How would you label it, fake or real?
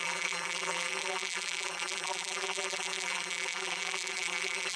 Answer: fake